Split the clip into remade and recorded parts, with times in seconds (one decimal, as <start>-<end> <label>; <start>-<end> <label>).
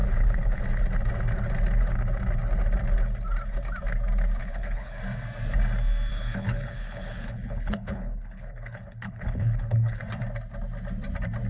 0.0-0.6 remade; 0.6-4.4 recorded; 4.4-5.0 remade; 5.0-6.1 recorded; 6.1-10.0 remade; 10.0-11.5 recorded